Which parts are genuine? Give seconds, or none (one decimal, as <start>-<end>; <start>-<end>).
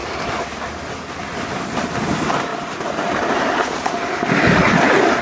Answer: 0.0-5.2